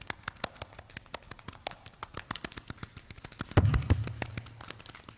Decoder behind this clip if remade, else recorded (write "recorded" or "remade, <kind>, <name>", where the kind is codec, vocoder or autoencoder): recorded